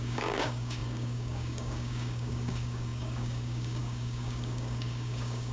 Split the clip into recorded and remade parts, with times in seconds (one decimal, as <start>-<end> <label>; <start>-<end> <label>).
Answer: 0.0-5.5 remade